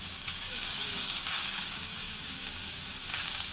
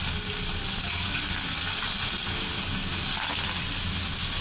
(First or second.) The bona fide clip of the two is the second